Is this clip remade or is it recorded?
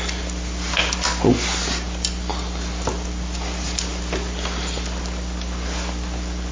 recorded